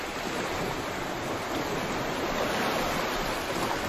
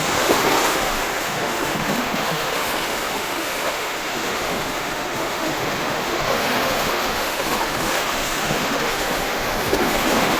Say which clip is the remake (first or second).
second